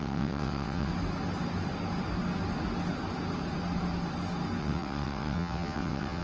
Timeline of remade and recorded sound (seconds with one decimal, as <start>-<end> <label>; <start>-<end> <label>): 0.0-0.9 remade; 0.9-4.6 recorded; 4.6-6.2 remade

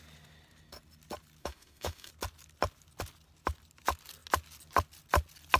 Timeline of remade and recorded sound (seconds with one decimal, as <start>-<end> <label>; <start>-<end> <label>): 0.0-1.4 recorded; 1.4-2.1 remade; 2.1-5.6 recorded

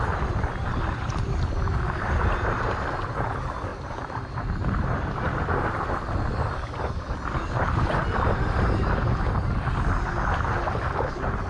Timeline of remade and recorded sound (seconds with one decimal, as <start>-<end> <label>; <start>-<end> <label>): 0.0-3.7 recorded; 3.7-4.3 remade; 4.3-11.5 recorded

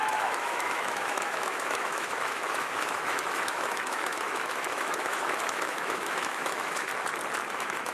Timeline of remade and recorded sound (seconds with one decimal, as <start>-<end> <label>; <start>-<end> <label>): 0.0-6.9 remade; 6.9-7.5 recorded; 7.5-7.9 remade

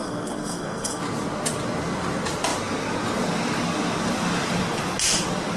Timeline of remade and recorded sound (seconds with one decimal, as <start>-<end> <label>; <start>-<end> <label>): 0.0-1.0 remade; 1.0-5.6 recorded

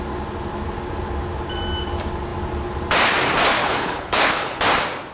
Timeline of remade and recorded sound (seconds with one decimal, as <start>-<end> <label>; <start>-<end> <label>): 0.0-3.6 recorded; 3.6-4.6 remade; 4.6-5.1 recorded